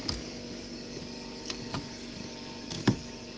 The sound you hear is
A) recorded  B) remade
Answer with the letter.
B